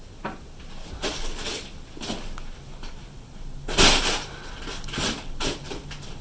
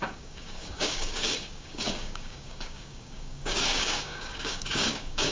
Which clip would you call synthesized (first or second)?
second